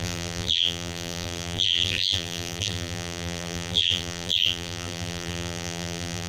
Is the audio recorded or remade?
remade